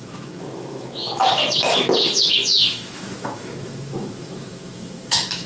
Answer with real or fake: fake